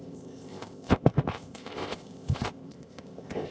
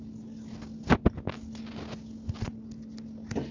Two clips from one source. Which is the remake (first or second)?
first